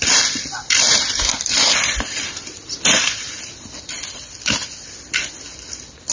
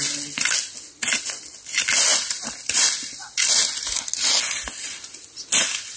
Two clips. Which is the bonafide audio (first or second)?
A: second